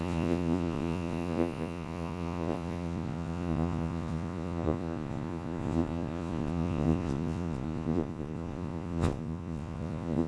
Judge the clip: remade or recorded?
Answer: remade